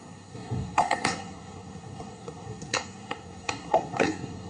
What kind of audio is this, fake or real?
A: fake